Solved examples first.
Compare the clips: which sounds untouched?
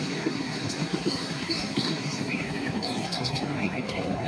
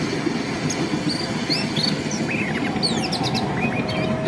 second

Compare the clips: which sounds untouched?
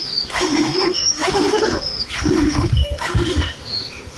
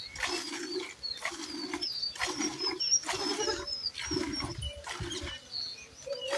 second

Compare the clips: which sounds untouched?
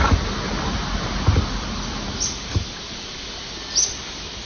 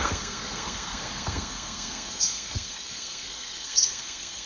first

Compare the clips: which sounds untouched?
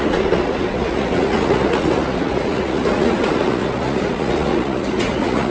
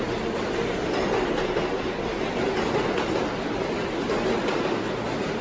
second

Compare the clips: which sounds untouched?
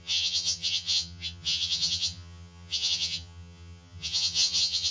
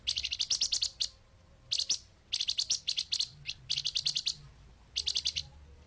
second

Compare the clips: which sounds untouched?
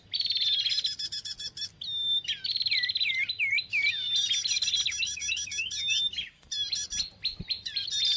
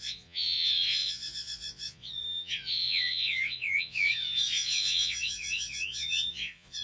first